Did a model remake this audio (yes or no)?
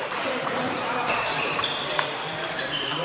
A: yes